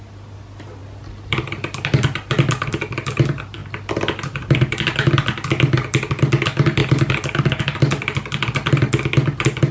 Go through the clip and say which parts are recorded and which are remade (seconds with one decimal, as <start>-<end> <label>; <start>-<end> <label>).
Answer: 0.0-0.8 recorded; 0.8-2.5 remade; 2.5-6.8 recorded; 6.8-7.6 remade; 7.6-9.7 recorded